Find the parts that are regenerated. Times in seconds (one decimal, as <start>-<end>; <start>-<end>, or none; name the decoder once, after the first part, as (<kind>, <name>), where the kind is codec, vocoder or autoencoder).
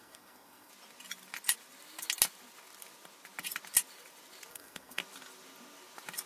0.0-0.7 (codec, SNAC); 4.5-5.0